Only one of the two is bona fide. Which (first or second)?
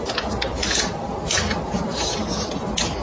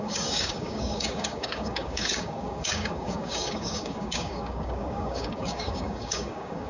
first